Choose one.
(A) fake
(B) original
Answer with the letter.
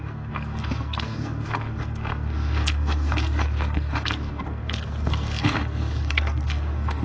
A